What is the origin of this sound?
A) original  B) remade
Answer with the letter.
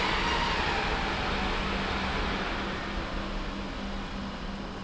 A